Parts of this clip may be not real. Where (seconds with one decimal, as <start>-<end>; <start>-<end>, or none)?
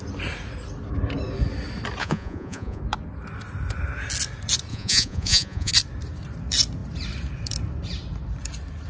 2.0-2.8; 4.7-5.7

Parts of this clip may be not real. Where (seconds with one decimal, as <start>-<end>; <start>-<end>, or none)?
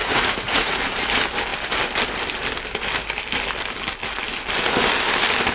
0.0-0.8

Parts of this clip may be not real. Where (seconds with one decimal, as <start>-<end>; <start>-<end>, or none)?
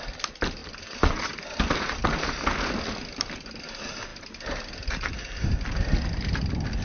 none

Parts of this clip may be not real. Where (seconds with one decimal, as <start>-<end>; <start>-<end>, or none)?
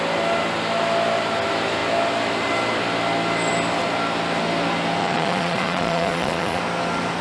5.0-6.6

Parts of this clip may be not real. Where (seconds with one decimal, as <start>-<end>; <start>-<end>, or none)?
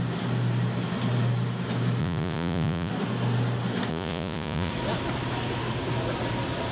2.0-2.9; 3.9-4.7